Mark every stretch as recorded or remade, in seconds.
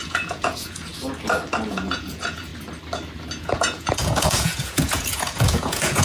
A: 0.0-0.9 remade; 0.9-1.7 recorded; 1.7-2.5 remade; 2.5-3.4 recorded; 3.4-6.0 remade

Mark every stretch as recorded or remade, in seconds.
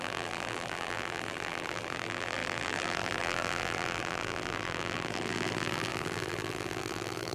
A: 0.0-7.3 remade